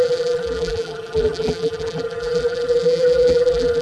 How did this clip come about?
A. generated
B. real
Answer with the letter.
A